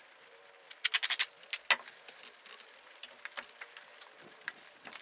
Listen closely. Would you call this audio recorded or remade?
recorded